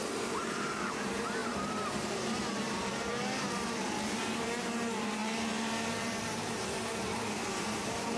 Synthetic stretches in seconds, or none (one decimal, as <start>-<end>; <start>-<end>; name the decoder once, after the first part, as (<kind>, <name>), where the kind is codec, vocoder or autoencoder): 0.0-8.2 (vocoder, BigVGAN v2)